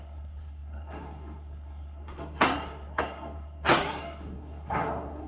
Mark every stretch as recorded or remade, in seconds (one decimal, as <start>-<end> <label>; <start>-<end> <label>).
0.0-5.3 remade

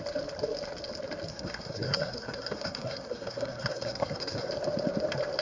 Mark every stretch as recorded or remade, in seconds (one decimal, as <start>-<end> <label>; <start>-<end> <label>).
0.0-1.3 recorded; 1.3-4.5 remade; 4.5-5.4 recorded